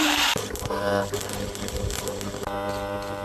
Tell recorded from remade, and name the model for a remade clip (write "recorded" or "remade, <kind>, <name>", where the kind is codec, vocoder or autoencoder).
remade, vocoder, BigVGAN v2